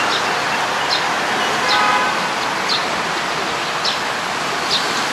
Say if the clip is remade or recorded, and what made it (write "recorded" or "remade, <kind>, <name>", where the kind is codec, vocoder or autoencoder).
recorded